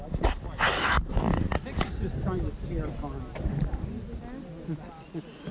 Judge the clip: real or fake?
real